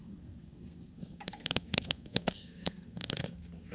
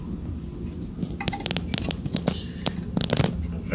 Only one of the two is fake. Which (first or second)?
first